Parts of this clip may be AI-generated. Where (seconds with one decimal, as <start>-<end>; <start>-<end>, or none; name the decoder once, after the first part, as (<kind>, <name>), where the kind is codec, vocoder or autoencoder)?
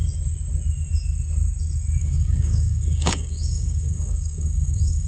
2.0-5.1 (codec, DAC)